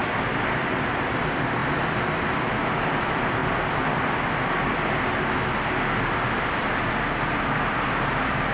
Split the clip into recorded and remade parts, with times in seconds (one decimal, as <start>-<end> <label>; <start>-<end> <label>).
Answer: 0.0-0.9 recorded; 0.9-3.4 remade; 3.4-6.4 recorded; 6.4-8.5 remade